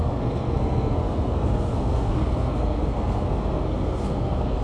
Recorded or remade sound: remade